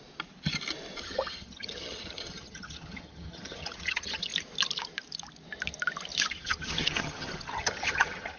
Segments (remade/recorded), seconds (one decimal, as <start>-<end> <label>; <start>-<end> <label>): 0.0-1.0 recorded; 1.0-4.3 remade; 4.3-6.3 recorded; 6.3-8.4 remade